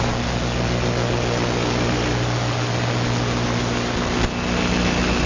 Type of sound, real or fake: real